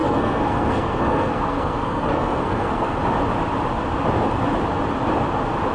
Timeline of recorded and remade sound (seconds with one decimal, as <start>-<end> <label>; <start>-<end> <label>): 0.0-3.0 remade; 3.0-5.7 recorded